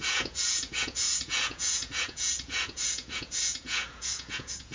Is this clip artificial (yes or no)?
yes